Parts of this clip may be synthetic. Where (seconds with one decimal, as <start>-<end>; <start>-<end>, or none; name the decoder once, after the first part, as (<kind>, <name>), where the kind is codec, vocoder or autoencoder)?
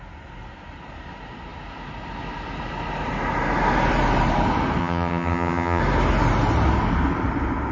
4.8-5.8 (vocoder, HiFi-GAN)